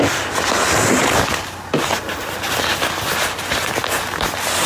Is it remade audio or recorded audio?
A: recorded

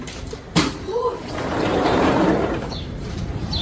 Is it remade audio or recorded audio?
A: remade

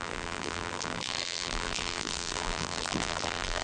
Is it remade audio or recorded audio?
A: remade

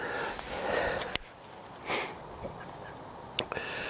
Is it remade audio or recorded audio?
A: recorded